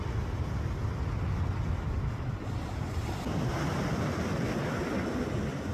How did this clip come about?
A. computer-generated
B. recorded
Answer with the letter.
B